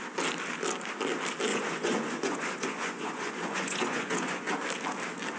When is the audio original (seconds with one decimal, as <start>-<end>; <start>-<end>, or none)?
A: 0.0-1.5; 4.5-5.4